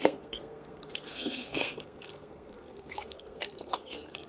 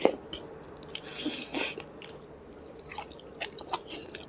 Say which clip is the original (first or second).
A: second